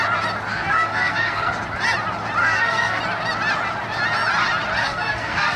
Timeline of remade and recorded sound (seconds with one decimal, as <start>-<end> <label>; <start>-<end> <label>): 0.0-0.5 recorded; 0.5-1.5 remade; 1.5-2.4 recorded; 2.4-3.0 remade; 3.0-4.8 recorded; 4.8-5.6 remade